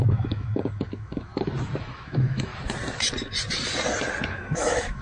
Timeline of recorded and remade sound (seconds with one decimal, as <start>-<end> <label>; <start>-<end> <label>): 0.0-1.3 remade; 1.3-1.8 recorded; 1.8-2.5 remade; 2.5-4.3 recorded; 4.3-5.0 remade